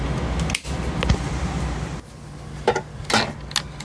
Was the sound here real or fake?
real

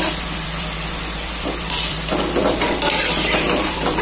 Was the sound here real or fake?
fake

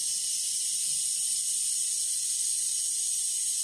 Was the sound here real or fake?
real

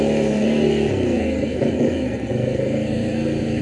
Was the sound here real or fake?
fake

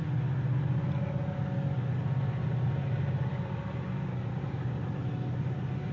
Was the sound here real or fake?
real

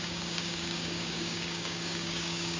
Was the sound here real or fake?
fake